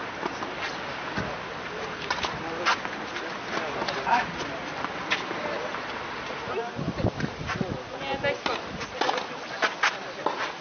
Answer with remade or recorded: recorded